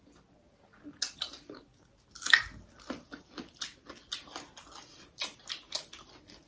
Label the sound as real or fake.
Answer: real